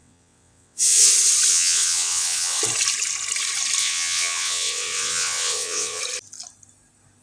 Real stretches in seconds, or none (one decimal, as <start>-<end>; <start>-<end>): 1.1-1.5; 2.6-3.8; 6.0-7.2